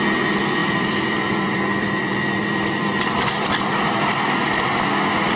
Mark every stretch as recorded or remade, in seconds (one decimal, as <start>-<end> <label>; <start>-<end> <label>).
0.0-0.6 recorded; 0.6-3.7 remade; 3.7-5.4 recorded